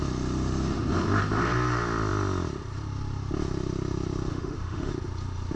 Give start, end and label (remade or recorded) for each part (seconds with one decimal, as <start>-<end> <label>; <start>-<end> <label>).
0.0-4.3 recorded; 4.3-4.9 remade; 4.9-5.6 recorded